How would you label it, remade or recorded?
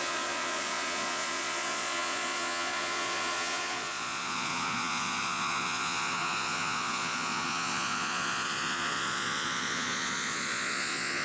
remade